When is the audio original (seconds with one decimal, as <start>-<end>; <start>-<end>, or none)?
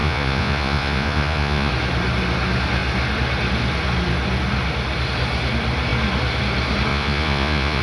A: 1.7-6.9